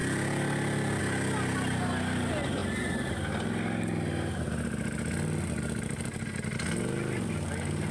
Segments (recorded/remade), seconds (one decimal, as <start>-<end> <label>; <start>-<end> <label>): 0.0-7.9 recorded